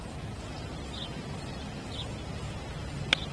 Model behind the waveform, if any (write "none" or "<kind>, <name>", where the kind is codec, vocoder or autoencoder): none